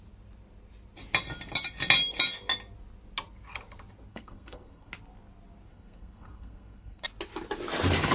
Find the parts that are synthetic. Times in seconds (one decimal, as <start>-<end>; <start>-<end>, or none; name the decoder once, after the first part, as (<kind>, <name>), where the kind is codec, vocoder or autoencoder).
4.1-4.9 (codec, SNAC); 5.7-7.0